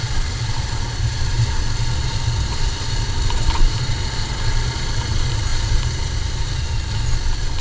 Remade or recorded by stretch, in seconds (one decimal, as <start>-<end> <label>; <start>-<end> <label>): 0.0-1.6 remade; 1.6-5.5 recorded; 5.5-6.5 remade; 6.5-7.6 recorded

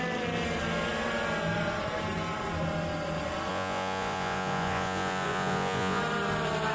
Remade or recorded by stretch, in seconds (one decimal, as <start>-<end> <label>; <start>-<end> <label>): 0.0-3.5 recorded; 3.5-6.0 remade; 6.0-6.7 recorded

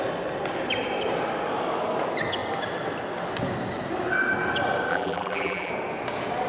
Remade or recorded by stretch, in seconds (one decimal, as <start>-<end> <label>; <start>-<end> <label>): 0.0-4.9 recorded; 4.9-5.7 remade; 5.7-6.5 recorded

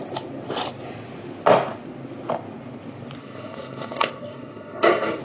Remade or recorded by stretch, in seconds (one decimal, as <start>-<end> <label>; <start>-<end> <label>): 0.0-3.2 recorded; 3.2-5.2 remade

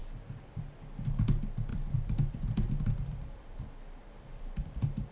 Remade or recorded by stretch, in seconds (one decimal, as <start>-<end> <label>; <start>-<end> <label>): 0.0-0.6 remade; 0.6-1.7 recorded; 1.7-5.1 remade

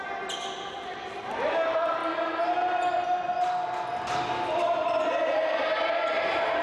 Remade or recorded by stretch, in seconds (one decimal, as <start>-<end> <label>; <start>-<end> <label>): 0.0-6.6 recorded